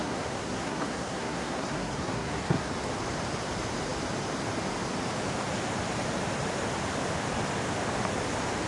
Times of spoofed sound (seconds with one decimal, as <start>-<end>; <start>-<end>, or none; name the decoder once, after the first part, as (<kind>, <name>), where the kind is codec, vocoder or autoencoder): 0.0-2.7 (codec, SNAC)